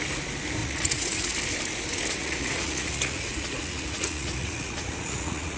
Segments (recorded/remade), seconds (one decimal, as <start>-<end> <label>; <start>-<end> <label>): 0.0-0.6 recorded; 0.6-1.3 remade; 1.3-2.2 recorded; 2.2-5.6 remade